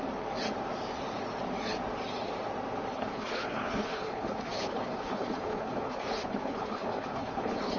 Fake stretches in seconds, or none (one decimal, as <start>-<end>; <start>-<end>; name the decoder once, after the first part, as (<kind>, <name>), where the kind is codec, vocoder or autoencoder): 2.9-7.8 (codec, HILCodec)